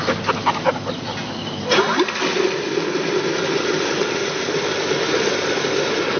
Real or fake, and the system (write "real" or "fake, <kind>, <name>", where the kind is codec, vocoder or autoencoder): real